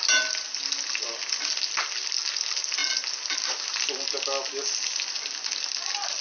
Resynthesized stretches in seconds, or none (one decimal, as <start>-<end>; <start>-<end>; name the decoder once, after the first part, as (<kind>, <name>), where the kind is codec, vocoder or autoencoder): none